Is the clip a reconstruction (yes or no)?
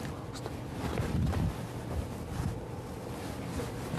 no